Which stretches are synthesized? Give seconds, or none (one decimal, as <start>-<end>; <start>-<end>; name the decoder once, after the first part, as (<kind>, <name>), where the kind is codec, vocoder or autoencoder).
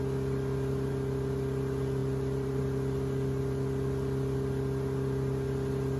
2.0-2.6 (vocoder, BigVGAN v2)